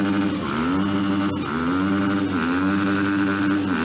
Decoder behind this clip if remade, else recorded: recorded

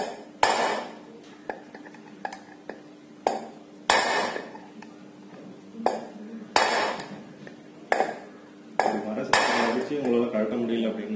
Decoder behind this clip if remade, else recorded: recorded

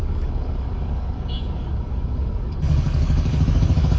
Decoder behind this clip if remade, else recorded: remade, codec, DAC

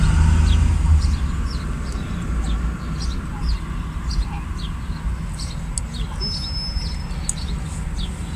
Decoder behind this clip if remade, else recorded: recorded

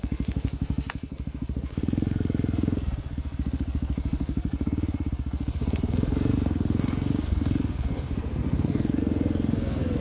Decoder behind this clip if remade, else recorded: remade, codec, SNAC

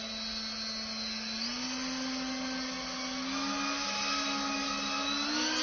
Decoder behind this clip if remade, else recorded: recorded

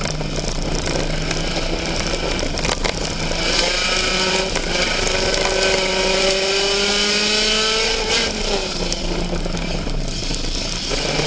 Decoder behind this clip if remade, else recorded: recorded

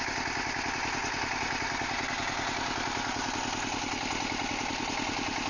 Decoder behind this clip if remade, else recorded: recorded